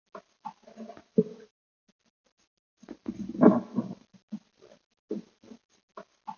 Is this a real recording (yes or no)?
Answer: yes